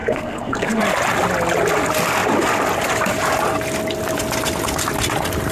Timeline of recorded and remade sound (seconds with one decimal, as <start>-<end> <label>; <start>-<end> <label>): 0.0-0.8 remade; 0.8-5.5 recorded